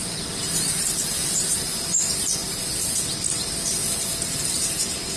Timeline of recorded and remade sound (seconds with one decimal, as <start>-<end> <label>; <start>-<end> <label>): 0.0-5.2 recorded